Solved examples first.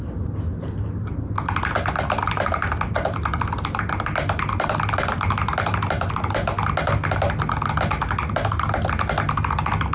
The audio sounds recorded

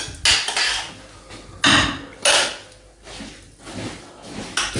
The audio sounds recorded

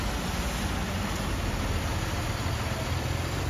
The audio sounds recorded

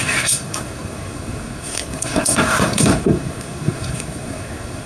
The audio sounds remade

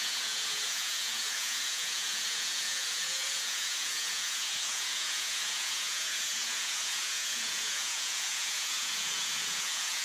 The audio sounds remade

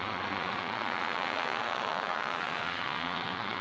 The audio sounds remade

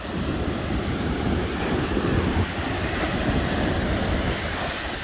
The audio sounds remade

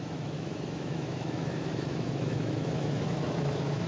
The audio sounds remade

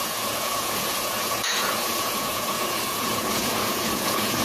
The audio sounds remade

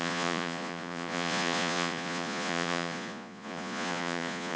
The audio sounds remade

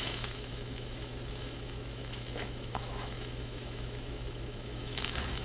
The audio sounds remade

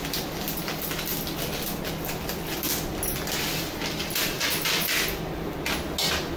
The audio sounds recorded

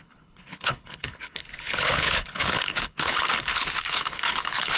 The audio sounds remade